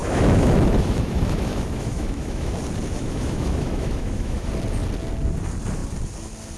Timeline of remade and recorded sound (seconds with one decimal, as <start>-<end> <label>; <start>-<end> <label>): 0.0-2.5 remade; 2.5-2.9 recorded; 2.9-4.5 remade; 4.5-6.6 recorded